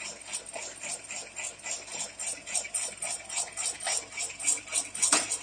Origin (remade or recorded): recorded